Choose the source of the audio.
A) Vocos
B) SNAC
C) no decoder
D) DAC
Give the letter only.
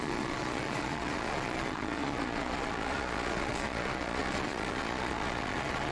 A